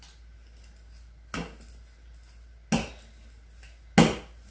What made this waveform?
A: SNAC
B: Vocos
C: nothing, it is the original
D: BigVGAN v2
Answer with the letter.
C